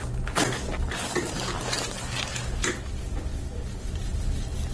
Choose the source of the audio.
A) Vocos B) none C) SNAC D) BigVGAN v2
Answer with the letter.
B